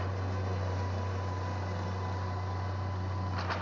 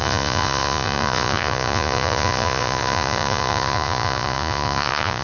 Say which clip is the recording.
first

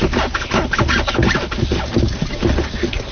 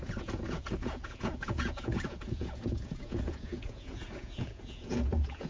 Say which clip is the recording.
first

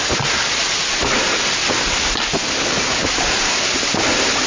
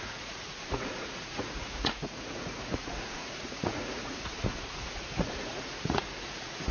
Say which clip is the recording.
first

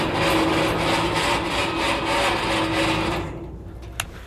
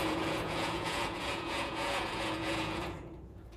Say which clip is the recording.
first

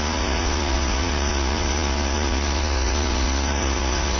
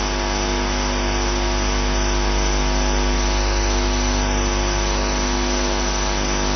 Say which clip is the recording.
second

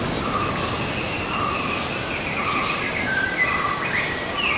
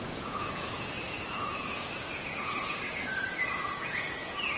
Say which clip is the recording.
first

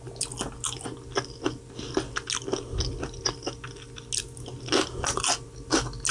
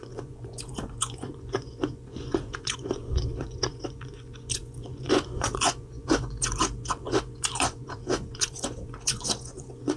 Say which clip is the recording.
first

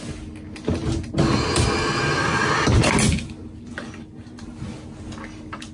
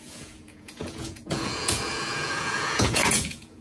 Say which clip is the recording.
first